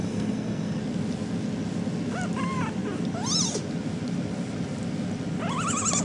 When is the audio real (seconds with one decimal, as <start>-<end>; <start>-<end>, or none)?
0.8-6.0